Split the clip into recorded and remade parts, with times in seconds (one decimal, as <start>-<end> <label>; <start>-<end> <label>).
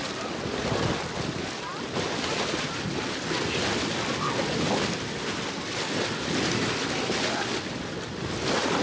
0.0-8.8 recorded